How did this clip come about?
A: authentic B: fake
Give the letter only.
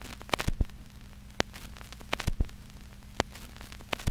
A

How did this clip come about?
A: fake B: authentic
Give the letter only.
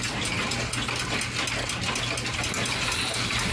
B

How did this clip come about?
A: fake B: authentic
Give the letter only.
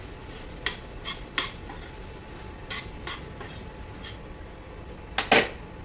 B